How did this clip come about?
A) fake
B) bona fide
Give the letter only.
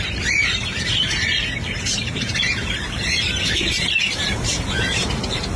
A